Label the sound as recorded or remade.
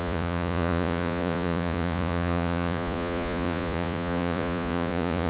remade